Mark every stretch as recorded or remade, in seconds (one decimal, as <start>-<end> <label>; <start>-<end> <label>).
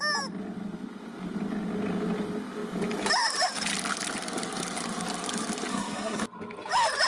0.0-5.7 recorded; 5.7-6.2 remade; 6.2-7.1 recorded